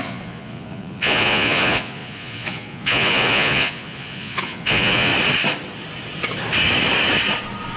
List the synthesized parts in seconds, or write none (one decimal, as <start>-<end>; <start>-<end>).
0.0-5.1